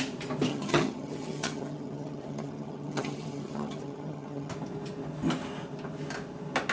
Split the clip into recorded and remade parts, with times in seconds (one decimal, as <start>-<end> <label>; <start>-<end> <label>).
0.0-0.5 recorded; 0.5-4.5 remade; 4.5-6.7 recorded